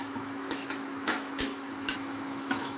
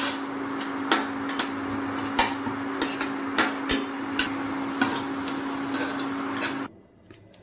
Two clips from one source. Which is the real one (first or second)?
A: second